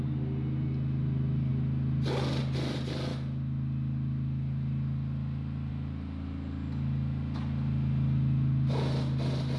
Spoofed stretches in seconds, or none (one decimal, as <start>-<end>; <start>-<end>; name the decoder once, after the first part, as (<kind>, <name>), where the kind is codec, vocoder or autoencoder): none